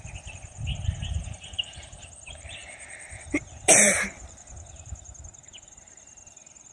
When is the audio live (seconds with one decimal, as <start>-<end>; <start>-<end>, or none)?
none